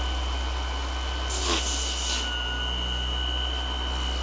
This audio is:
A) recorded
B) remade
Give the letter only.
A